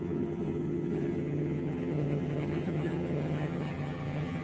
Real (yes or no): no